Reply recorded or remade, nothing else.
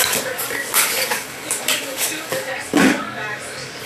remade